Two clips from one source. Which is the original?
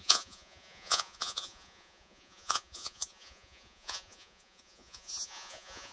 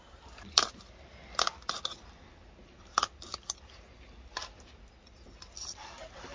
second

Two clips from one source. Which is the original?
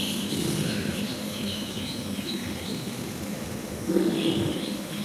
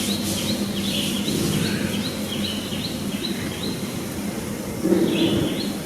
second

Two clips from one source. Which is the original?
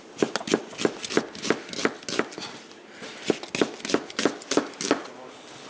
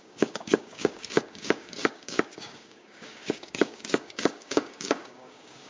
first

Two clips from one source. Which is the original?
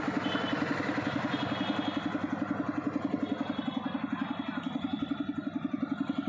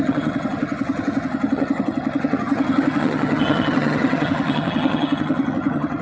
first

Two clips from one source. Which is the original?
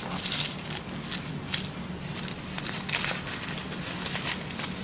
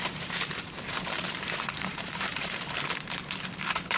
first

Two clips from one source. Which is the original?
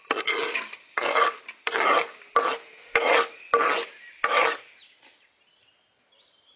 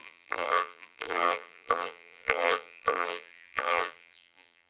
first